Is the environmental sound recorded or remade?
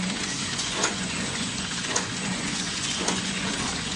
remade